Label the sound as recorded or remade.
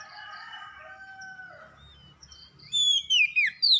recorded